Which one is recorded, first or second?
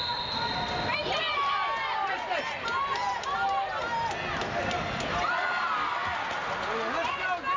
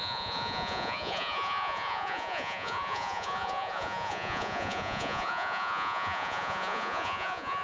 first